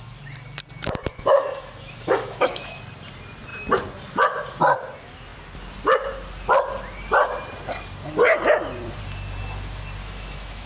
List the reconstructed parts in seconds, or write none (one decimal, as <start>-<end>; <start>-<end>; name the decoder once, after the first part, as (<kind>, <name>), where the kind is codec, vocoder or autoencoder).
1.1-2.8 (autoencoder, DAC-VAE); 10.0-10.7